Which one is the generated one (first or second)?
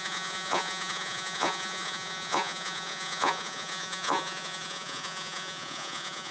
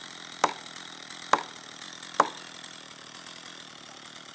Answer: first